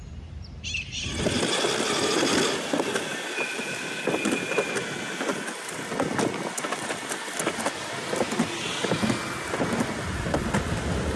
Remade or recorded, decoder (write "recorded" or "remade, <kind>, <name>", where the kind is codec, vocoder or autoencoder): recorded